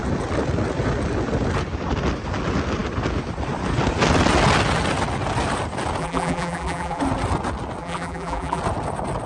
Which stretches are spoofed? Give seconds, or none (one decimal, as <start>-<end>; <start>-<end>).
6.0-7.0; 7.8-8.6